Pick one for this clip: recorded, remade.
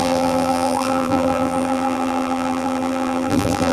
remade